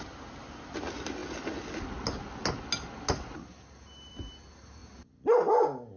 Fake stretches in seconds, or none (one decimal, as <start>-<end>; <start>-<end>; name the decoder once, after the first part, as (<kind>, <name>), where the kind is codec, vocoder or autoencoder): none